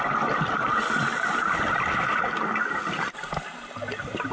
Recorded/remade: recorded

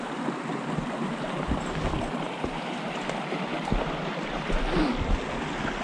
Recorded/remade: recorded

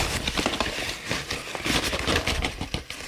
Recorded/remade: recorded